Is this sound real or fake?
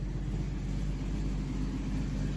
real